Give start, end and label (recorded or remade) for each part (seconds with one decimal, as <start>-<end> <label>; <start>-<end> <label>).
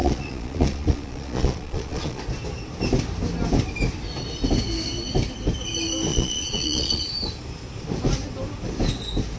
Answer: 0.0-2.2 remade; 2.2-6.1 recorded; 6.1-7.1 remade; 7.1-9.4 recorded